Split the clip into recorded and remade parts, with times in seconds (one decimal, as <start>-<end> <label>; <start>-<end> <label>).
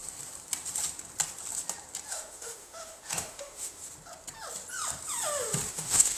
0.0-2.1 recorded; 2.1-3.8 remade; 3.8-5.7 recorded; 5.7-6.2 remade